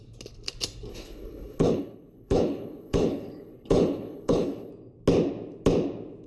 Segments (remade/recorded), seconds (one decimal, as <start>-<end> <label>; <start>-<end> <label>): 0.0-0.9 recorded; 0.9-4.7 remade; 4.7-6.3 recorded